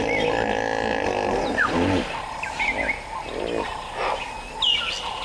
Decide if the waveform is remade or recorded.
recorded